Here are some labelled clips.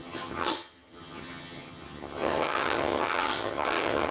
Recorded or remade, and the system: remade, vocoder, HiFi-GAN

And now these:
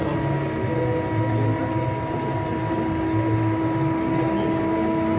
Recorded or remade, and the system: recorded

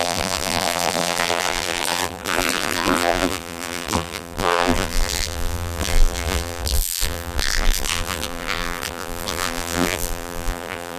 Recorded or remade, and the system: remade, vocoder, BigVGAN v2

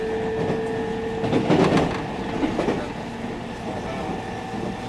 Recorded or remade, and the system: recorded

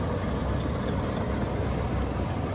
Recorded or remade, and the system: recorded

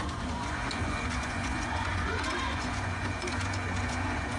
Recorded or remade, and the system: remade, vocoder, Vocos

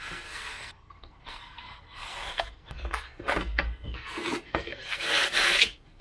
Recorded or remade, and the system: remade, codec, SNAC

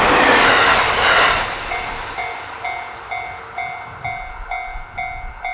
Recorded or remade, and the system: recorded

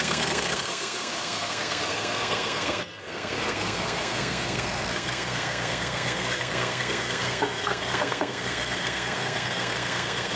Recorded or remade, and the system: remade, codec, SNAC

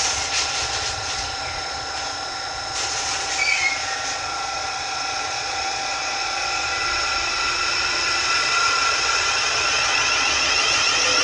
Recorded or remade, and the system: remade, vocoder, Vocos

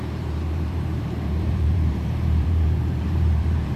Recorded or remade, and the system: remade, vocoder, BigVGAN v2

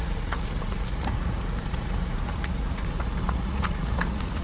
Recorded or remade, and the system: remade, vocoder, Vocos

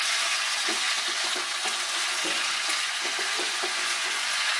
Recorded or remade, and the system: remade, vocoder, Vocos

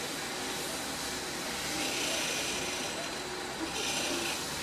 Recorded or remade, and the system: recorded